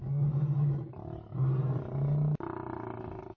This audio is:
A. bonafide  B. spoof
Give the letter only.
A